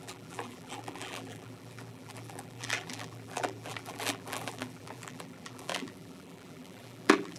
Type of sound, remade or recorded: remade